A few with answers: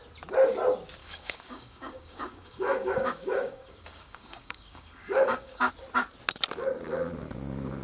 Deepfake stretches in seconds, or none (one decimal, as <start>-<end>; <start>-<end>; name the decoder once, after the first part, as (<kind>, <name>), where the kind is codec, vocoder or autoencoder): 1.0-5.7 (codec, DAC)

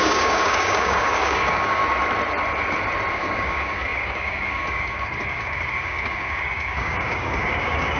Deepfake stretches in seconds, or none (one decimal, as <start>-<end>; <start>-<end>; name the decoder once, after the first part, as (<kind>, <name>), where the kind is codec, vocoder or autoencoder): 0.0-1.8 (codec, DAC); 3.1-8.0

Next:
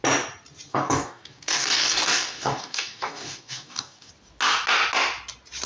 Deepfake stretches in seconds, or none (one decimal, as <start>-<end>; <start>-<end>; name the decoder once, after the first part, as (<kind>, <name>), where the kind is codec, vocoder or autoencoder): 0.7-4.1 (codec, DAC)